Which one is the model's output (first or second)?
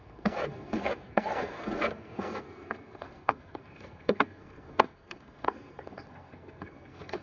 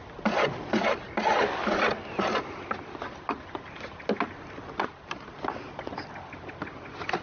first